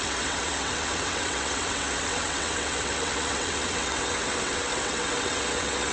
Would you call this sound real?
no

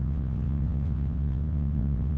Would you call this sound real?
no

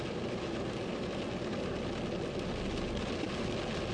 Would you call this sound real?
yes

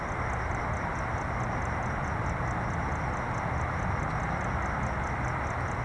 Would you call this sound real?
yes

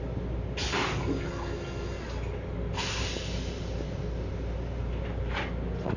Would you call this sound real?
yes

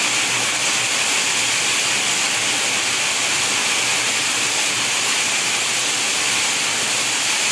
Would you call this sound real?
yes